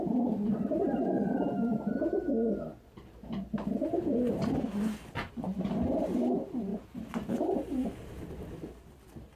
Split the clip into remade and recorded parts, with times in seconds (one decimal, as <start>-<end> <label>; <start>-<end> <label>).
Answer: 0.0-2.3 remade; 2.3-5.3 recorded; 5.3-6.7 remade; 6.7-8.6 recorded; 8.6-9.4 remade